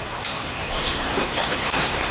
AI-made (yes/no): yes